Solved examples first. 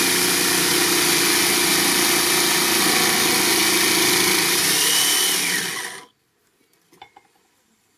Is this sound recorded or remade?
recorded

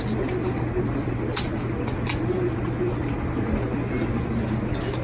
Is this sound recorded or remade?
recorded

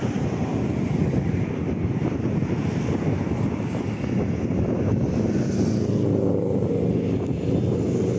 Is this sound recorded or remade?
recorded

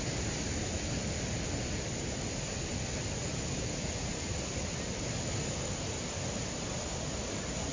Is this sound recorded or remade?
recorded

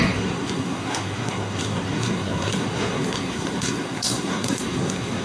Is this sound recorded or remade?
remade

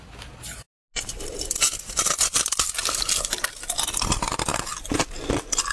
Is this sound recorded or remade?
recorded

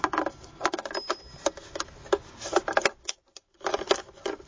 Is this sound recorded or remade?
recorded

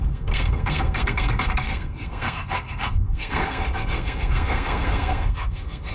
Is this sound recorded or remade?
remade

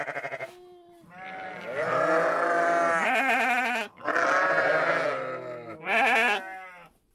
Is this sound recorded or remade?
recorded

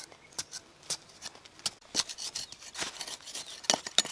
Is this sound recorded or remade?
recorded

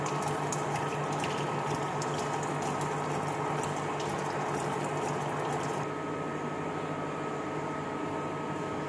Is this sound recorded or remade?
recorded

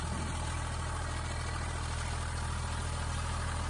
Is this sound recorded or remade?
recorded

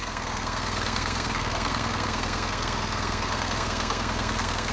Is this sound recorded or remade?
remade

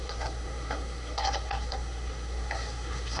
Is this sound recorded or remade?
remade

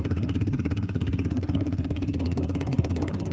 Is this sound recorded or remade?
remade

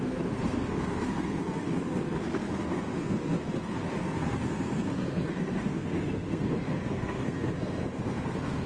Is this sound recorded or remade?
remade